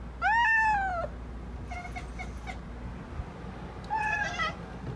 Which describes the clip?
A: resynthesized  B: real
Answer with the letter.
B